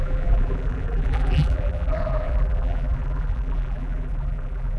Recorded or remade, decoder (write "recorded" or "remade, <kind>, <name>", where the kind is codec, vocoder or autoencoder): remade, vocoder, BigVGAN v2